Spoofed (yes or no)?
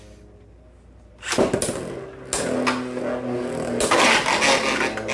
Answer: no